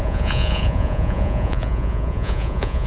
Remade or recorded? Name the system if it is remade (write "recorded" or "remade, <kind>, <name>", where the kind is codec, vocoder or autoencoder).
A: remade, vocoder, Vocos